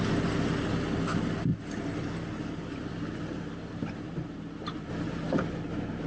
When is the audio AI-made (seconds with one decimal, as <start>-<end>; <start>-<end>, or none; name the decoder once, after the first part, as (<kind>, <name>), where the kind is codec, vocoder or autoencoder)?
none